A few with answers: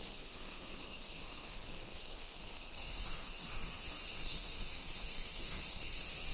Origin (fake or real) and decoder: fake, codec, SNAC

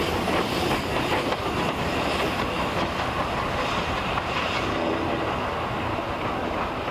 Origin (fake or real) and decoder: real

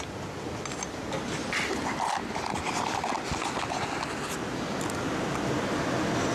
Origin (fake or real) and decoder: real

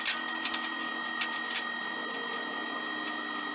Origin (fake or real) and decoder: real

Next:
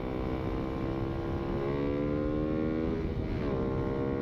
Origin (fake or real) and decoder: real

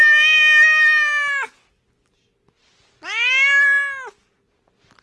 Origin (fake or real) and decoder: real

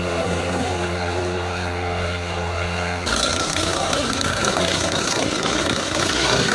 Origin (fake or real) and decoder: fake, codec, SNAC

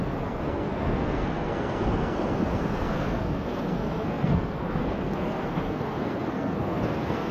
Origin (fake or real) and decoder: fake, codec, SNAC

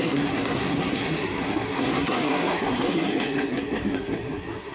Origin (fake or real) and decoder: fake, codec, SNAC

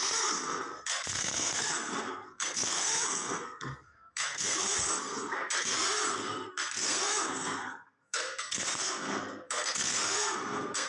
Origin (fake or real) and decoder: fake, codec, SNAC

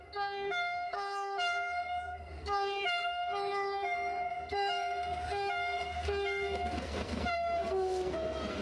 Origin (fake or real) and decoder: fake, codec, SNAC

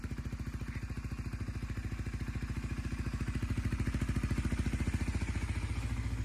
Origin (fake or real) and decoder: real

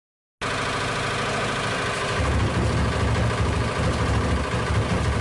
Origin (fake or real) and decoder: real